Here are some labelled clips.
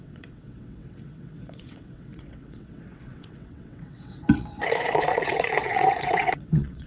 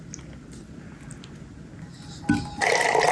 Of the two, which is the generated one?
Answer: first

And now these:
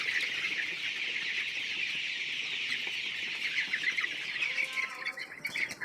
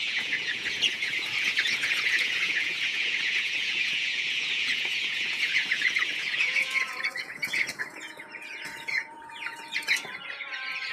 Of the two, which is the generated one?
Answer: second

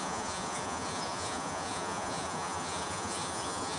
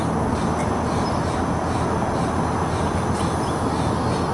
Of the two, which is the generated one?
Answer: first